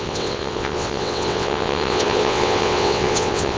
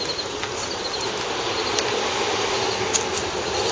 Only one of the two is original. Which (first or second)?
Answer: second